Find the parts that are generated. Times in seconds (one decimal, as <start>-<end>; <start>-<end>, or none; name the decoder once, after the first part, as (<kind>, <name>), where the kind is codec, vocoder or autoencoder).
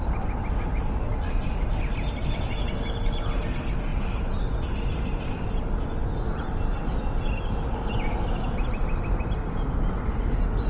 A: none